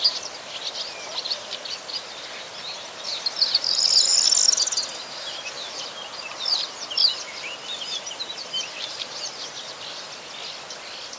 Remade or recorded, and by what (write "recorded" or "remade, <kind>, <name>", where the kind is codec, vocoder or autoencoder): recorded